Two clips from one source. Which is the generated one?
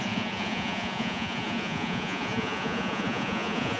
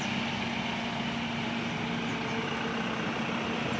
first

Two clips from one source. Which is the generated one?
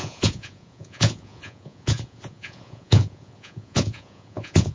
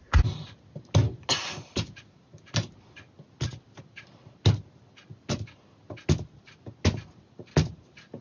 first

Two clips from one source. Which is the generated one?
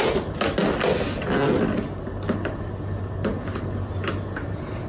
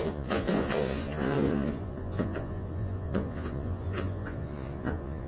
second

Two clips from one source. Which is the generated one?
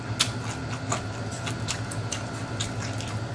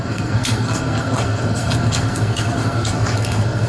second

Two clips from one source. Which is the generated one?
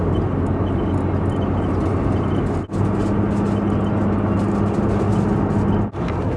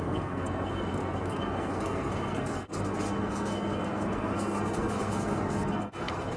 second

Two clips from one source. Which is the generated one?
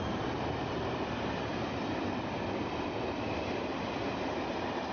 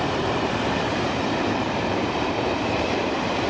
second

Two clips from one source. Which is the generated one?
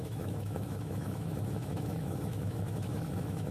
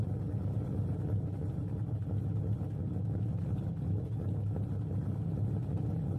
first